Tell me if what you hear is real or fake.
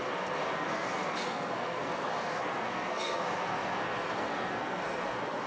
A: fake